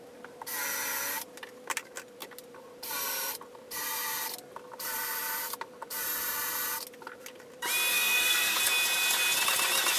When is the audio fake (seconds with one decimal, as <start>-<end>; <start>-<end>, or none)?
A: 7.9-8.6